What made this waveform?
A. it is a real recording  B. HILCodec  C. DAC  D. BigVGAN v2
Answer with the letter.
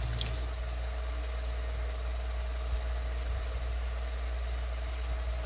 A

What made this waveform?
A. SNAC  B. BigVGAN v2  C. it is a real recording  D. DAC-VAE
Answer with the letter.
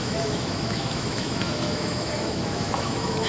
D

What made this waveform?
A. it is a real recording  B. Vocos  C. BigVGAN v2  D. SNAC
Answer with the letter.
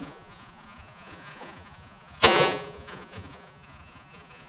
B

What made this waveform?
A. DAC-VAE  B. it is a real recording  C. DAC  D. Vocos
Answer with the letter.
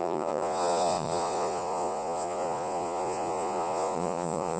D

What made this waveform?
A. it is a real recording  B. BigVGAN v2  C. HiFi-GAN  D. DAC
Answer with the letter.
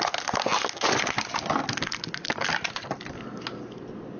A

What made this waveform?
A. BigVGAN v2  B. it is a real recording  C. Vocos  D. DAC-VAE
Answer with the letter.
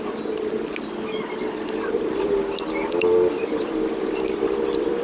B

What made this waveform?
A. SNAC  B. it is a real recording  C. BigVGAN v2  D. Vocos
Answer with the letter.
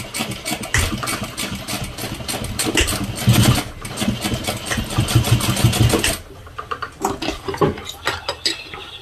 B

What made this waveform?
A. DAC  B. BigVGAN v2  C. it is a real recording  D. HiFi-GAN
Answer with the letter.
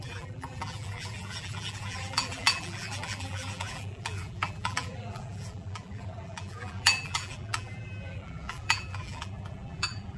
B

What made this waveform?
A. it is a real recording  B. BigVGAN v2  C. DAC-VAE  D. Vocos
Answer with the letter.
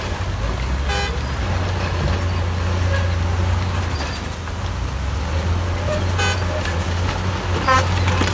A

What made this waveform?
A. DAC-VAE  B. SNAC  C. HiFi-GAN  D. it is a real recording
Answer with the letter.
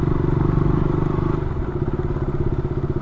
D